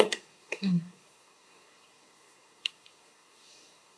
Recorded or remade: remade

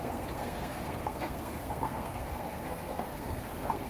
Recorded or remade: remade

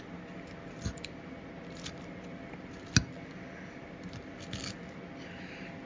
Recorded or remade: recorded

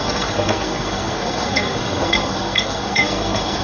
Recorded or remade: remade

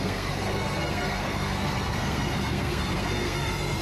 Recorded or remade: remade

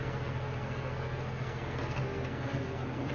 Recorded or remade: remade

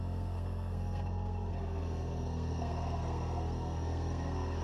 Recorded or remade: remade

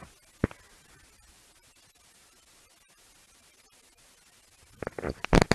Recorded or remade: recorded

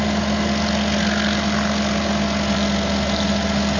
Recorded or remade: recorded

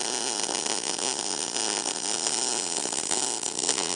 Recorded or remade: recorded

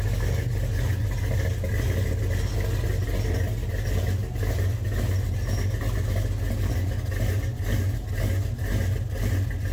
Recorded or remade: recorded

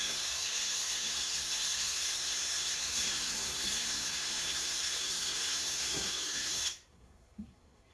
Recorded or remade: remade